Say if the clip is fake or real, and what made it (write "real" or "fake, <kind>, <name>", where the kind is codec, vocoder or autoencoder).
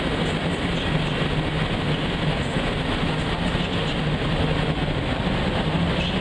real